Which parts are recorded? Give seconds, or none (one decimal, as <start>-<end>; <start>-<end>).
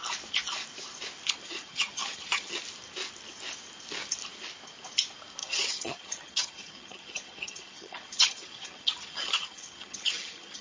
0.0-1.4; 2.6-5.4